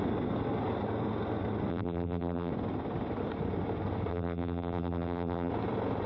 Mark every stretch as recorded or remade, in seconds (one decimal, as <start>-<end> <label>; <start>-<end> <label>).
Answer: 0.0-1.7 recorded; 1.7-2.5 remade; 2.5-4.1 recorded; 4.1-5.5 remade; 5.5-6.1 recorded